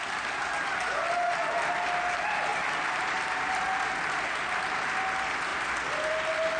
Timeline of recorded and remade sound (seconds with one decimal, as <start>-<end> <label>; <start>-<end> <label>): 0.0-6.6 recorded